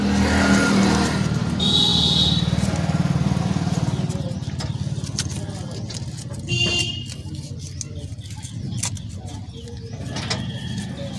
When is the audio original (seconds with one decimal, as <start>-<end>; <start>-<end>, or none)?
0.0-11.2